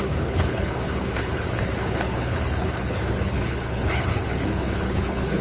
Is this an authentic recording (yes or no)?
no